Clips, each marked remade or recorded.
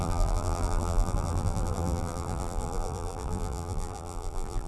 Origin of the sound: remade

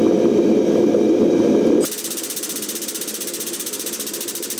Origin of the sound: recorded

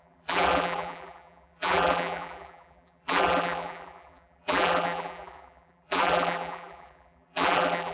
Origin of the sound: remade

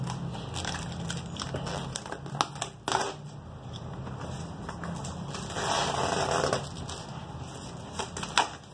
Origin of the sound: recorded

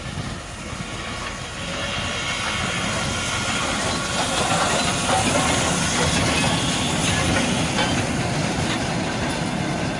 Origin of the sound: recorded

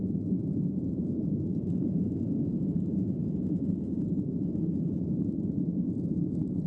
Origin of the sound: remade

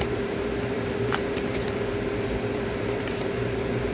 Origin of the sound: remade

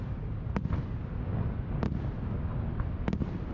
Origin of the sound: recorded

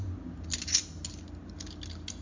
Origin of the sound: recorded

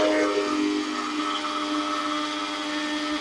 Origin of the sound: recorded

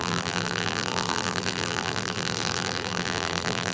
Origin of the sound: remade